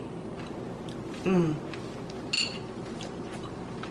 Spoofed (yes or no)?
no